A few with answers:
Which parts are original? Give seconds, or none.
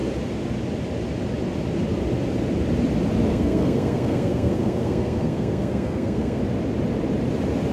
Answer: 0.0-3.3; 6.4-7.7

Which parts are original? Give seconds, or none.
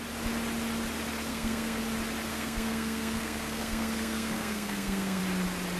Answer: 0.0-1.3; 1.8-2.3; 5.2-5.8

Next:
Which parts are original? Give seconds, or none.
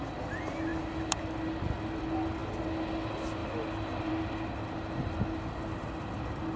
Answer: 0.0-6.6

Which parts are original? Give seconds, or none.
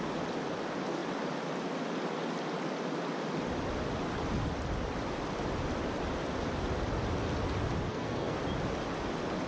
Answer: 0.0-7.9; 8.4-9.5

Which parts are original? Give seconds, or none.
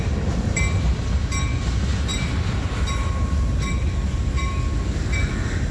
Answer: 0.0-5.7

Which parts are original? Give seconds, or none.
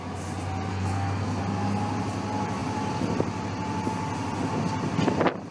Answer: 0.0-0.7; 1.4-5.5